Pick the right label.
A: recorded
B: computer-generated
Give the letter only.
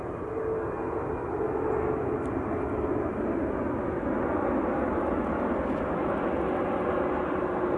A